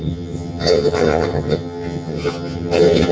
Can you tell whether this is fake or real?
fake